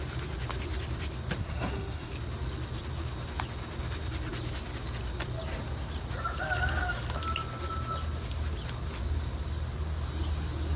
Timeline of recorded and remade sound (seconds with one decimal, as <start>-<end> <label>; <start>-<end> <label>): 0.0-1.4 recorded; 1.4-2.1 remade; 2.1-10.8 recorded